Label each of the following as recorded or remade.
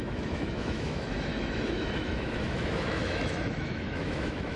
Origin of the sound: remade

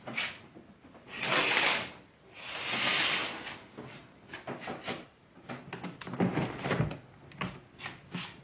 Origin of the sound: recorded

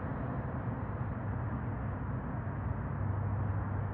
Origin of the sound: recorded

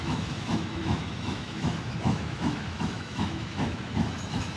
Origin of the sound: remade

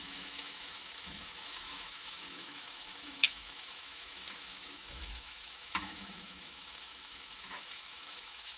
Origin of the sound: remade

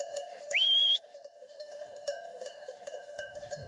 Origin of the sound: remade